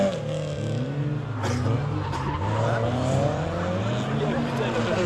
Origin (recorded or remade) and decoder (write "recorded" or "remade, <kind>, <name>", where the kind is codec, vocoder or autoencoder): recorded